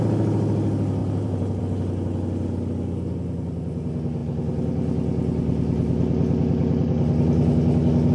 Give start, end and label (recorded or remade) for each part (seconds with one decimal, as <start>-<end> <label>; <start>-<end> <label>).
0.0-1.0 recorded; 1.0-1.6 remade; 1.6-8.1 recorded